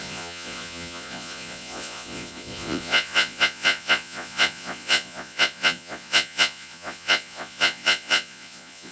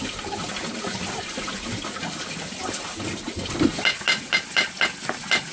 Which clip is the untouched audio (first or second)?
second